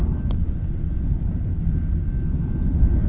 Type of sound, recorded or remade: recorded